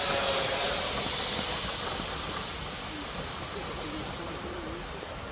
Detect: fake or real real